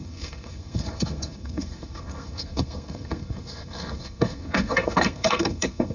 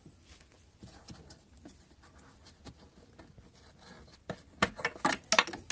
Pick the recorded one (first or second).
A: second